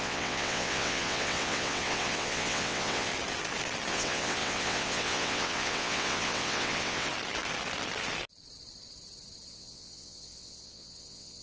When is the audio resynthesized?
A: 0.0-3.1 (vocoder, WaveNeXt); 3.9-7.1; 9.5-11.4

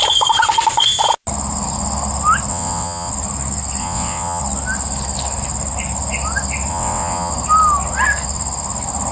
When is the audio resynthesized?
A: 2.5-3.1 (vocoder, WaveNeXt); 3.8-4.4; 6.7-7.3

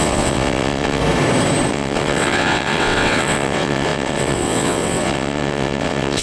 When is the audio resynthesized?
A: 0.0-1.0 (vocoder, WaveNeXt); 1.7-6.2

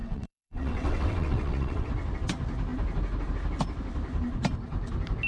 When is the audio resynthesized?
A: 0.0-1.9 (vocoder, WaveNeXt)

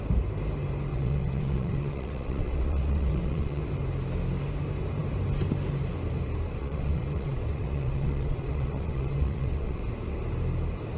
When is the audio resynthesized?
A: 0.9-3.6 (vocoder, WaveNeXt); 6.6-9.8

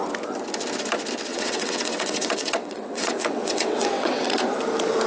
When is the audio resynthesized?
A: 1.3-4.4 (vocoder, WaveNeXt)

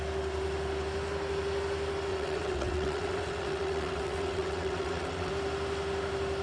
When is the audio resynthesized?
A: 2.1-5.3 (vocoder, WaveNeXt)

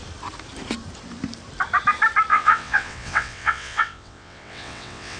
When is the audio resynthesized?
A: 2.3-5.2 (vocoder, WaveNeXt)